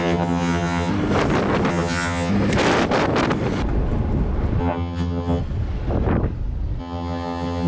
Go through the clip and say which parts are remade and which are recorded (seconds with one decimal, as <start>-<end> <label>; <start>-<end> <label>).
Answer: 0.0-0.9 remade; 0.9-1.7 recorded; 1.7-2.3 remade; 2.3-4.6 recorded; 4.6-5.4 remade; 5.4-6.8 recorded; 6.8-7.7 remade

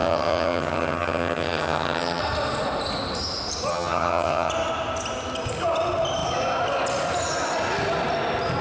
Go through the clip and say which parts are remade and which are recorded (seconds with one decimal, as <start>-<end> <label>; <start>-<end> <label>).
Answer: 0.0-2.2 remade; 2.2-3.7 recorded; 3.7-4.5 remade; 4.5-8.6 recorded